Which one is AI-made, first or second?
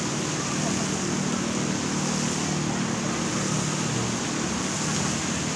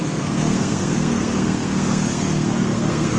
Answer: second